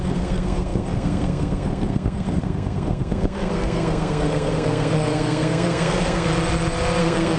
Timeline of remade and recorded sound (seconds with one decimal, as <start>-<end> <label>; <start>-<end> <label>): 0.0-6.3 remade; 6.3-7.0 recorded; 7.0-7.4 remade